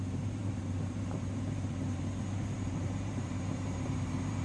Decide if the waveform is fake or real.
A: fake